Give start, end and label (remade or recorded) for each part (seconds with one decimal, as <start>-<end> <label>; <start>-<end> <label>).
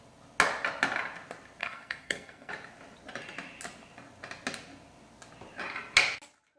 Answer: 0.0-1.6 recorded; 1.6-2.5 remade; 2.5-6.6 recorded